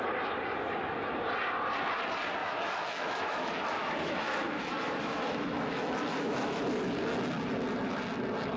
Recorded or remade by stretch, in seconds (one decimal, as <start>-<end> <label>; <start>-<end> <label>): 0.0-2.4 recorded; 2.4-6.6 remade; 6.6-8.6 recorded